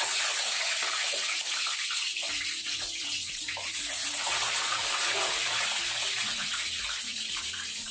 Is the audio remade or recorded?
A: remade